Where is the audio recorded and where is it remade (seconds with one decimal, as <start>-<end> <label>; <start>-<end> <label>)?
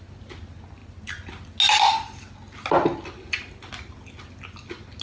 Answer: 0.0-5.0 recorded